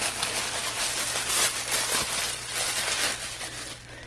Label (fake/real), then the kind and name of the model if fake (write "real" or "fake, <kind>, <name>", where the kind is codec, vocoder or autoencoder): real